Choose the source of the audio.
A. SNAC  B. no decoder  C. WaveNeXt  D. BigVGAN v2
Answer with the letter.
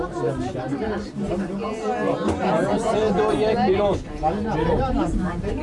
B